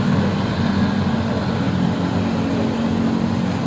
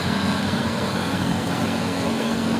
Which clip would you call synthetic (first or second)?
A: second